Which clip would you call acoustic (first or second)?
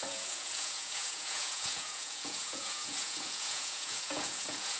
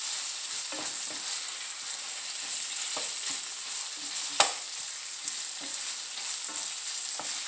second